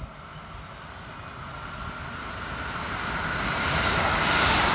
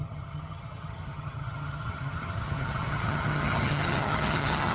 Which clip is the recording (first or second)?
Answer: first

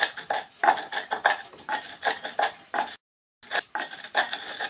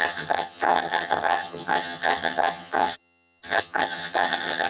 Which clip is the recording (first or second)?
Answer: first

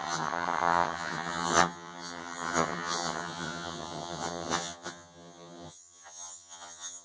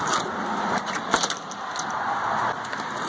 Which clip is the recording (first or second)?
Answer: second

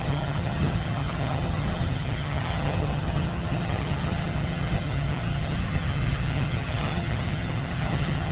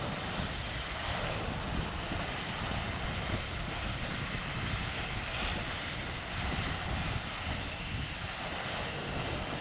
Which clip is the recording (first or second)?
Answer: second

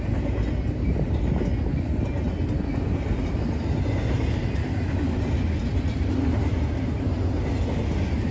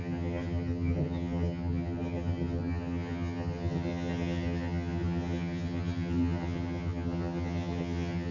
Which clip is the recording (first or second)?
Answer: first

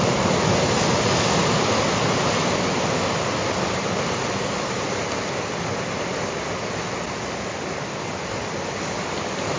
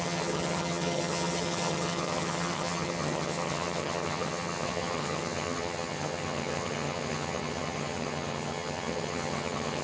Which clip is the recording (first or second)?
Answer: first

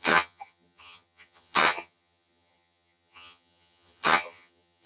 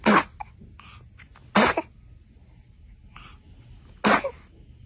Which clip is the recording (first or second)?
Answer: second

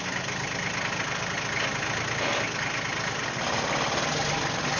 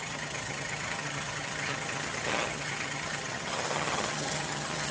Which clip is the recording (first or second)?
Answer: first